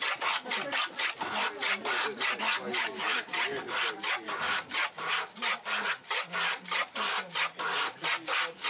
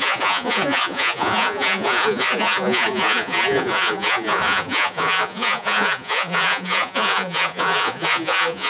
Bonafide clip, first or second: first